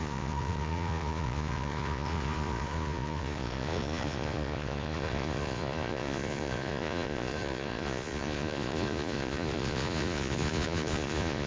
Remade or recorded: remade